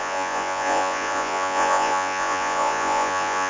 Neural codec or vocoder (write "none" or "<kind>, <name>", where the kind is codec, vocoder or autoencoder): vocoder, Vocos